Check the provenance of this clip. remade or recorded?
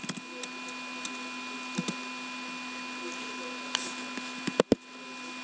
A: recorded